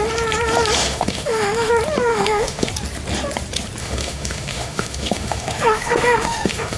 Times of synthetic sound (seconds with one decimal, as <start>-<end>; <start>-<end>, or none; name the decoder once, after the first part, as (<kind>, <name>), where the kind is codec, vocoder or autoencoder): 0.8-1.7 (autoencoder, DAC-VAE); 2.1-2.7; 3.8-6.8